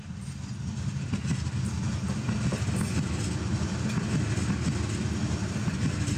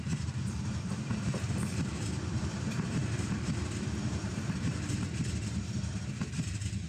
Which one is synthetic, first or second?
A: second